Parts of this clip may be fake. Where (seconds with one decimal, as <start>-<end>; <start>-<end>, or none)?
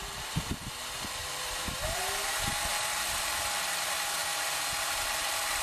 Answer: 0.0-2.7; 3.4-4.2; 4.8-5.6